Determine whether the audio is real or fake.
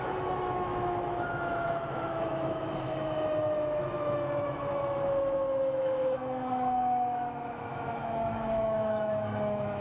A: fake